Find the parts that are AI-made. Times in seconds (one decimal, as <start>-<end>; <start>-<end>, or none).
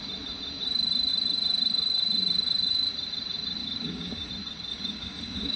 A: 3.6-4.3; 4.7-5.6